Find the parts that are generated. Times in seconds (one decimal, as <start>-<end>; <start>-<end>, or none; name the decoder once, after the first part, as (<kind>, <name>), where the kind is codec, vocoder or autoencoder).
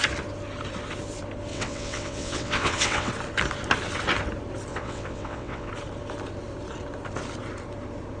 1.5-3.1 (vocoder, WaveNeXt); 4.7-5.7